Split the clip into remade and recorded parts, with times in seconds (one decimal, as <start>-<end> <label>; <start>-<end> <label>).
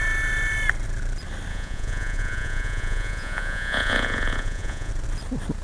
0.0-1.5 recorded; 1.5-4.9 remade; 4.9-5.6 recorded